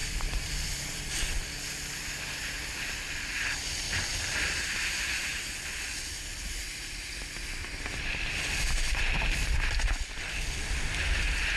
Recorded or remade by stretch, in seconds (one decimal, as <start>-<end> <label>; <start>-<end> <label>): 0.0-0.8 remade; 0.8-4.1 recorded; 4.1-4.8 remade; 4.8-11.6 recorded